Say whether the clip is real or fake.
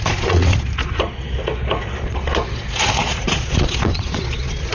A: fake